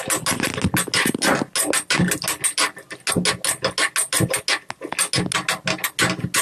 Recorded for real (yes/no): yes